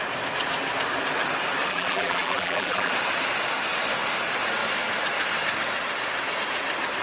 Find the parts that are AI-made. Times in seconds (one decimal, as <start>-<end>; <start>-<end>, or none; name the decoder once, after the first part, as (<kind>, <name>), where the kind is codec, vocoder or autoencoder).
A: 1.7-2.9 (vocoder, BigVGAN v2)